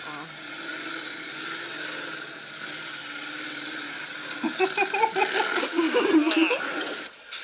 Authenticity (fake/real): real